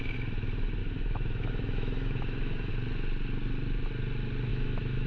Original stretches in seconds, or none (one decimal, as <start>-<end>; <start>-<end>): 0.0-0.8; 2.7-4.5